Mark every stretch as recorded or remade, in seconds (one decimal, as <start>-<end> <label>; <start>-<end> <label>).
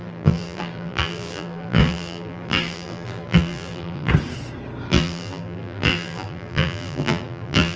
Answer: 0.0-4.1 remade; 4.1-4.9 recorded; 4.9-7.8 remade